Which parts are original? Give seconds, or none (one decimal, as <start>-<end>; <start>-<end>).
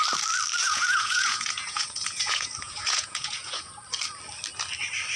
0.0-0.6; 3.7-5.2